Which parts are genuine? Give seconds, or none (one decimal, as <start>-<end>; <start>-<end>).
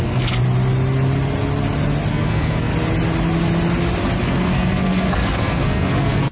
0.4-2.1; 2.7-4.2